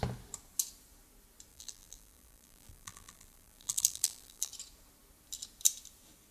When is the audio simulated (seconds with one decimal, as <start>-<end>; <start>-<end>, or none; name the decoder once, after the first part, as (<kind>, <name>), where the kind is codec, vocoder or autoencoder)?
1.5-4.5 (vocoder, BigVGAN v2)